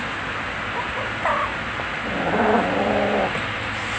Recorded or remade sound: recorded